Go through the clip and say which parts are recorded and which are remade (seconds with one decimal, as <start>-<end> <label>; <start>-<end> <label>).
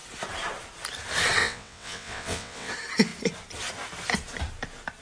0.0-1.4 recorded; 1.4-2.7 remade; 2.7-5.0 recorded